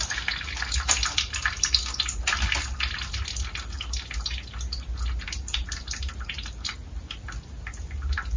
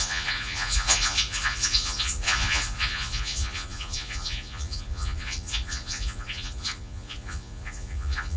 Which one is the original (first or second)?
first